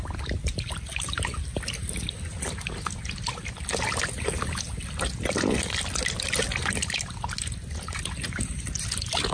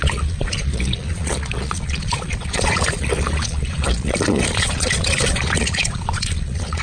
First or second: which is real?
first